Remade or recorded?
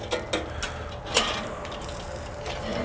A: recorded